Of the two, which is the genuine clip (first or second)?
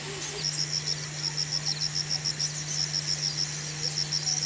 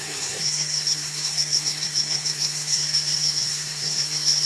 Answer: first